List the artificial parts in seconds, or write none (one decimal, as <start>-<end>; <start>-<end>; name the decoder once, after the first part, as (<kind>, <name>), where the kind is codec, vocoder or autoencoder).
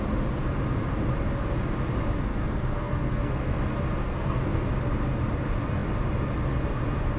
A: 2.3-3.6 (codec, SNAC); 4.0-4.7